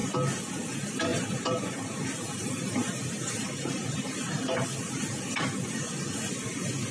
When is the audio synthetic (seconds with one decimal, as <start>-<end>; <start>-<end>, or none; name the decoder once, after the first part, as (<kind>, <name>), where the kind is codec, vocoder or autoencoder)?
1.1-5.2 (vocoder, BigVGAN v2)

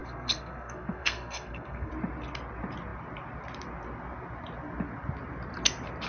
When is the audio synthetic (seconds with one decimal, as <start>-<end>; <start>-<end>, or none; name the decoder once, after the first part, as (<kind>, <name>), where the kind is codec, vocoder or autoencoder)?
0.0-1.9 (codec, SNAC)

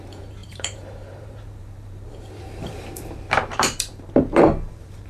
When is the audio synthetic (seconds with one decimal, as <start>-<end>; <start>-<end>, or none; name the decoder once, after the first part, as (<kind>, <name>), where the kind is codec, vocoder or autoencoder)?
0.0-5.1 (vocoder, BigVGAN v2)